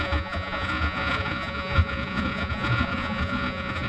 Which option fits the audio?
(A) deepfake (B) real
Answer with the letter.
A